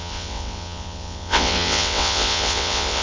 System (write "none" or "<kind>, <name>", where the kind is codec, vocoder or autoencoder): vocoder, WaveNeXt